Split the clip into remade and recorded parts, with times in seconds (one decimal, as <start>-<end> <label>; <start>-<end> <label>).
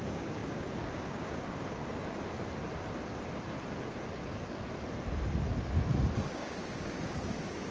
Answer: 0.0-1.8 remade; 1.8-6.1 recorded; 6.1-7.7 remade